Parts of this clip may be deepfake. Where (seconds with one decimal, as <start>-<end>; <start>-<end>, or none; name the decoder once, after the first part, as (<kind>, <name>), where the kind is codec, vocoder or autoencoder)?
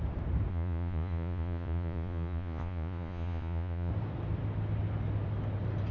0.5-3.9 (vocoder, Vocos)